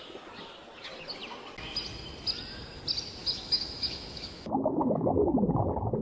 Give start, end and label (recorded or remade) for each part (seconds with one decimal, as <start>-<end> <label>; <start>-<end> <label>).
0.0-3.2 recorded; 3.2-5.3 remade; 5.3-6.0 recorded